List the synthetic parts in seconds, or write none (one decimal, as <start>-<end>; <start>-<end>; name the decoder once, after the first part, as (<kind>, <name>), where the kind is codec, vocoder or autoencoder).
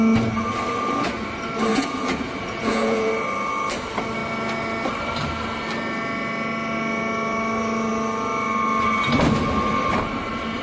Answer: 1.7-3.1 (vocoder, Vocos)